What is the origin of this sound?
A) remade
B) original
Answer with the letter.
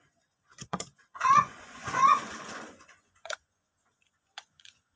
A